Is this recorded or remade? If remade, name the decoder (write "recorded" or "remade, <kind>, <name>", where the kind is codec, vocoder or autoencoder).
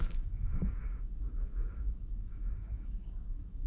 remade, codec, DAC